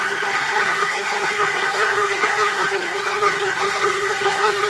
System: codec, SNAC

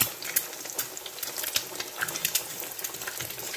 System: none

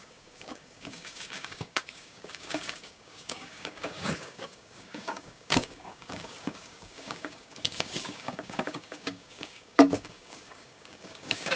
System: codec, DAC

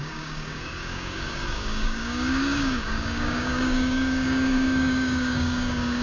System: codec, DAC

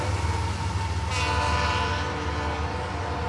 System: none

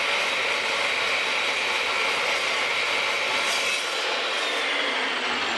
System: none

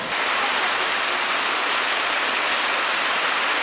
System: none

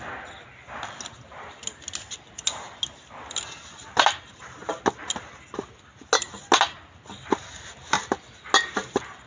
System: none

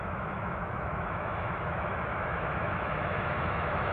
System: autoencoder, DAC-VAE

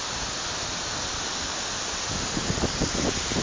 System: none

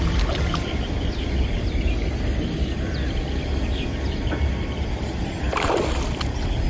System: none